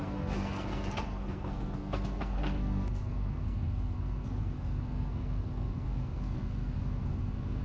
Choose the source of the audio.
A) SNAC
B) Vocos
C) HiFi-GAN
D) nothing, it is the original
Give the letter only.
A